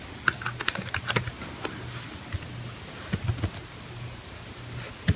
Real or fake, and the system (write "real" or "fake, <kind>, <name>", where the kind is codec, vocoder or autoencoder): real